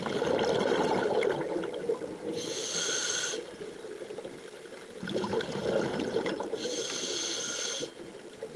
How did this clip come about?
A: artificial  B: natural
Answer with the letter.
B